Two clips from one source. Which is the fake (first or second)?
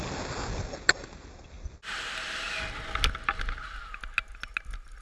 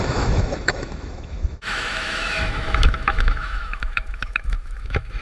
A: second